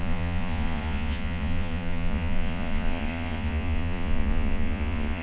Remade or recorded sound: remade